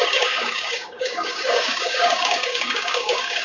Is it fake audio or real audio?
fake